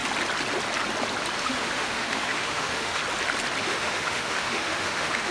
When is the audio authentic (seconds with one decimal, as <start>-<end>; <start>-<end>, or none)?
0.0-1.4; 3.0-3.6